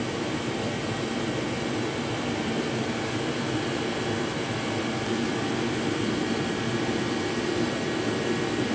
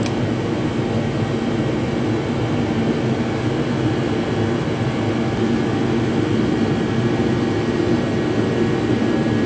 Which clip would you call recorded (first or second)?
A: second